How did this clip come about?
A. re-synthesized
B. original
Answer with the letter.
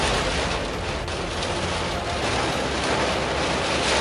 B